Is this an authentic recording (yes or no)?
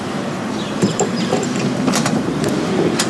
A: no